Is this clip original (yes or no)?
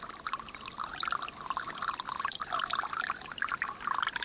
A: yes